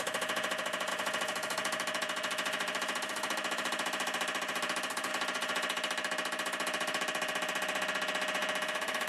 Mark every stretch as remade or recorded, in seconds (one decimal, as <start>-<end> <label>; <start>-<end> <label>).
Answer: 0.0-0.9 recorded; 0.9-5.1 remade; 5.1-8.4 recorded; 8.4-9.1 remade